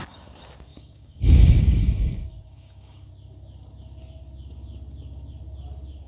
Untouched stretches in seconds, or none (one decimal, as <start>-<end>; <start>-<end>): 0.0-0.7; 3.1-6.1